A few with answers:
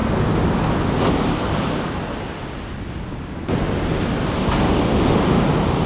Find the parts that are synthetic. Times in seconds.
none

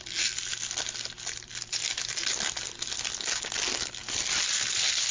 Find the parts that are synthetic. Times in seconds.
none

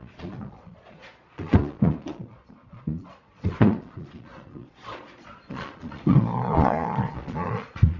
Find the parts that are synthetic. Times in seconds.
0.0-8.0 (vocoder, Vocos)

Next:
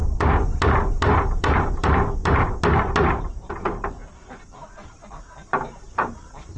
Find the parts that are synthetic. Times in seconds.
0.0-2.5 (vocoder, BigVGAN v2); 5.5-6.6